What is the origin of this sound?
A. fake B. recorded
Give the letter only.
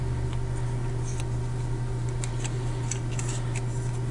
B